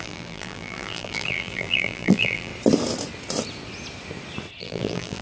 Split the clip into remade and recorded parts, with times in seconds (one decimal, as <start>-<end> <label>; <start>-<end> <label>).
0.0-2.5 remade; 2.5-4.6 recorded; 4.6-5.2 remade